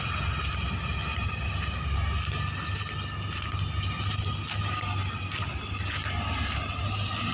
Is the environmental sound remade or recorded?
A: recorded